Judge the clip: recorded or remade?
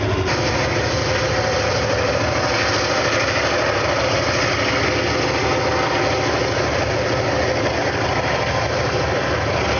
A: recorded